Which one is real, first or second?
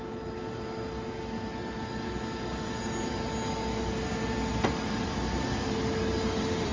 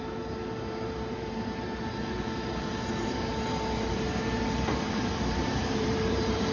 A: first